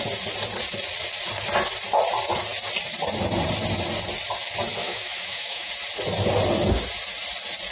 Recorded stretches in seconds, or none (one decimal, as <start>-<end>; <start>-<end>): 0.0-4.8; 5.7-7.7

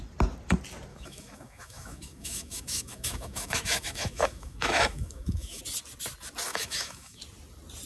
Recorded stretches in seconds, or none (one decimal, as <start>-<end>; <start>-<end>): 0.0-0.9; 5.6-6.5; 7.2-7.9

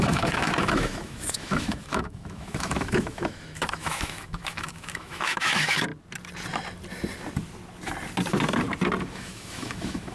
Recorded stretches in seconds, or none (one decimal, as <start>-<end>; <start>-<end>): 5.9-9.1

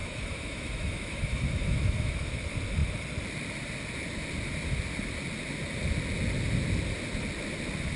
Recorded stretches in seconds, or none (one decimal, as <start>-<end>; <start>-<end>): 2.4-8.0

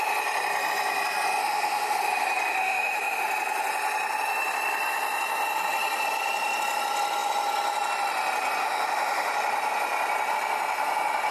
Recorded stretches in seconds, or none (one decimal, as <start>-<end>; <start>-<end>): 0.0-1.4; 2.0-2.6; 3.2-8.6; 9.3-11.3

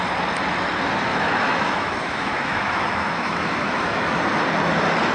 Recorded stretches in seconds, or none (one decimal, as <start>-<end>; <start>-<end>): 0.0-1.1; 4.2-5.1

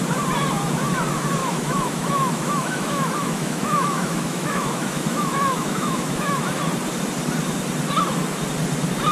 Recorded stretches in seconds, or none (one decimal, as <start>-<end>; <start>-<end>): 0.0-1.4; 6.6-9.1